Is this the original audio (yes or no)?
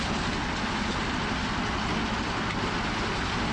yes